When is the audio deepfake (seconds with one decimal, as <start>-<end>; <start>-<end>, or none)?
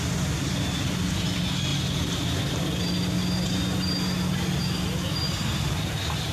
none